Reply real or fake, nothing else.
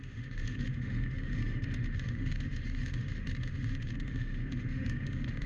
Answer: fake